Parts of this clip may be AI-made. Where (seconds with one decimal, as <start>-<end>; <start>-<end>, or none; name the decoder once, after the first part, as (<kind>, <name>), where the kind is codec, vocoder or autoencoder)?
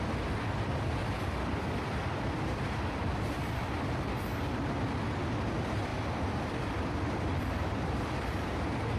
1.0-3.9 (vocoder, BigVGAN v2); 5.9-8.6